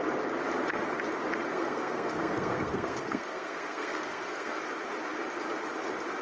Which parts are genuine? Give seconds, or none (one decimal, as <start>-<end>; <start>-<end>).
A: 0.0-1.5; 4.6-6.2